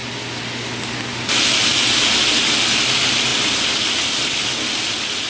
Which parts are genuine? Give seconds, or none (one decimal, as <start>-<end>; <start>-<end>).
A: 0.0-3.3; 4.5-5.3